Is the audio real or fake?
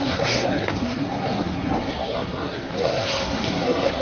fake